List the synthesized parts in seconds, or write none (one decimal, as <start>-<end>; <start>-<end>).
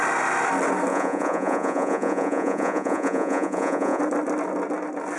0.9-4.0